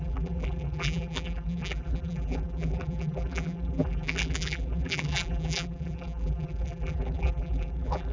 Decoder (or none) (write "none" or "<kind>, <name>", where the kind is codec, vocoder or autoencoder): vocoder, BigVGAN v2